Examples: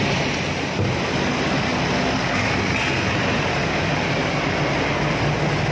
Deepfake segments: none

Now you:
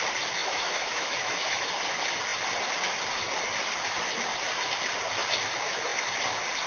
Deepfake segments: 0.4-1.7 (autoencoder, DAC-VAE)

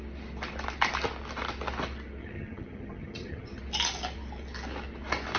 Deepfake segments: 2.2-3.6 (vocoder, HiFi-GAN)

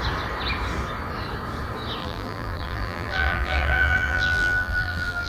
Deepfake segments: 2.0-5.3 (vocoder, BigVGAN v2)

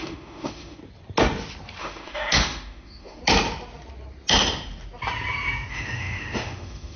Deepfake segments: 0.0-0.8 (autoencoder, DAC-VAE); 1.8-3.2; 5.7-7.0

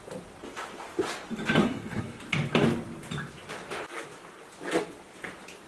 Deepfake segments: 1.6-2.2 (codec, SNAC)